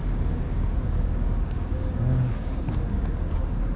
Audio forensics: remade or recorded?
remade